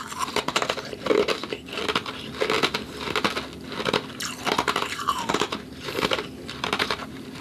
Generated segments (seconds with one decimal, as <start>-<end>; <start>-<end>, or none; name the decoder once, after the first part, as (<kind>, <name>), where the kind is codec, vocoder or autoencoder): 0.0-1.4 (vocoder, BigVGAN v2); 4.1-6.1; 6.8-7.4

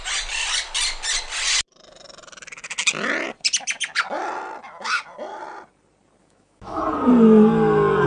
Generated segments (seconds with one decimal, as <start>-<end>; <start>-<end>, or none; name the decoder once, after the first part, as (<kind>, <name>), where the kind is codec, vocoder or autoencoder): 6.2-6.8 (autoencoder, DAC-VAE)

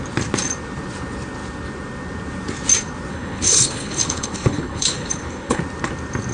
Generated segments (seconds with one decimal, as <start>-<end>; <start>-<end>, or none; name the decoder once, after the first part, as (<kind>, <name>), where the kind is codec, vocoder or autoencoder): 3.1-5.6 (codec, HILCodec)

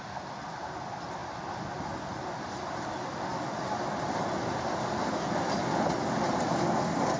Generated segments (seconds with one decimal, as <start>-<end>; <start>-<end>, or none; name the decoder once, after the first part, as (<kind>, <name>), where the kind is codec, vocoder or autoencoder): none

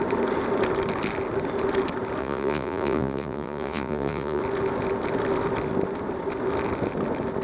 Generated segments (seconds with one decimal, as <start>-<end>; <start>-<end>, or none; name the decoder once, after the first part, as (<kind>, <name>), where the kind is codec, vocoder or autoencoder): 2.2-4.4 (vocoder, Vocos)